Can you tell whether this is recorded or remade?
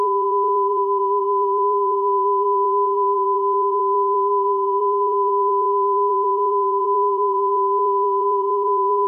remade